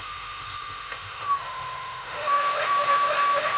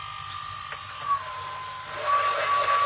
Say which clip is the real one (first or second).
second